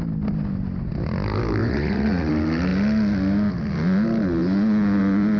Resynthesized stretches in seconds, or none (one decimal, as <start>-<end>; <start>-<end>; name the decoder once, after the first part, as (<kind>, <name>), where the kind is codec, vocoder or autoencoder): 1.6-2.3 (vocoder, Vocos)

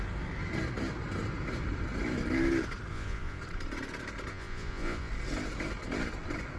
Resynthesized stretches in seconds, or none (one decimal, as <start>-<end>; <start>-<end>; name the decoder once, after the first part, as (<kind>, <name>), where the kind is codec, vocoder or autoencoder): 2.9-3.4 (vocoder, Vocos); 4.3-5.1

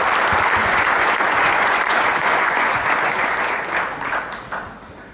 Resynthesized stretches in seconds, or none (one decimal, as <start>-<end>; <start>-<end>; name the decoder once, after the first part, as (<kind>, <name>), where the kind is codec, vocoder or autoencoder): 0.6-3.7 (vocoder, Vocos)

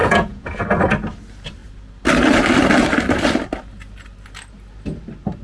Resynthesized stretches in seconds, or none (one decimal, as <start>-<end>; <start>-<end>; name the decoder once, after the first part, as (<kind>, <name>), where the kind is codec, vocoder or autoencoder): 0.0-0.6 (vocoder, Vocos)

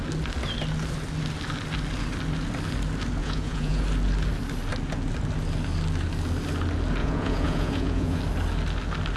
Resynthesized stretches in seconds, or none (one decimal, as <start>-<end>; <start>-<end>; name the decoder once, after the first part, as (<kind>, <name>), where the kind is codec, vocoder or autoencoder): 3.2-3.8 (vocoder, Vocos); 7.0-8.2

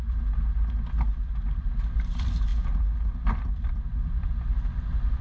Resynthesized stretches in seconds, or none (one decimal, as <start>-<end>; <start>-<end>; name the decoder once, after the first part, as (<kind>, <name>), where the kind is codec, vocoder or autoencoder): none

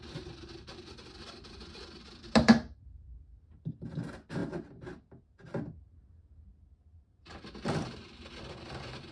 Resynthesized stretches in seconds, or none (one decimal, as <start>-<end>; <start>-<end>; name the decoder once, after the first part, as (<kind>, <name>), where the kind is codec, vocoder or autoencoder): none